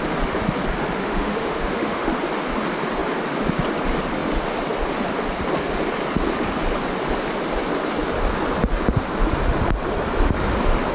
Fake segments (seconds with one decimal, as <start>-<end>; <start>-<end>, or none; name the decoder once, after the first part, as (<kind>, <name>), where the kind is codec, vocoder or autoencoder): 1.0-2.1 (autoencoder, DAC-VAE)